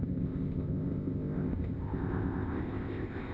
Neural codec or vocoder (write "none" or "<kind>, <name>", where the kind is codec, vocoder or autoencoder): codec, ZipCodec